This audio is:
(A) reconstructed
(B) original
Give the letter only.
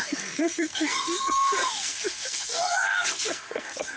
A